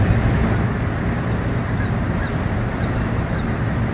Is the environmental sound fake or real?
real